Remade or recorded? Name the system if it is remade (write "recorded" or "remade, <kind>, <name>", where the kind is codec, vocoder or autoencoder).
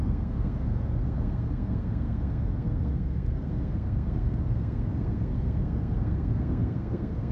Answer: remade, codec, SNAC